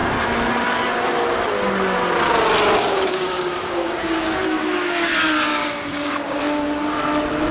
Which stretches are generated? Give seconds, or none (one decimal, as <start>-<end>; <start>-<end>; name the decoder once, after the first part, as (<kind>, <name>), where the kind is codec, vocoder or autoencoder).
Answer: 2.8-5.1 (codec, DAC); 5.5-6.4